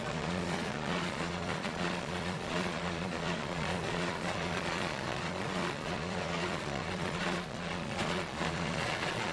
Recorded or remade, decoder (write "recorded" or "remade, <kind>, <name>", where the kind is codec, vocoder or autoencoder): remade, vocoder, Vocos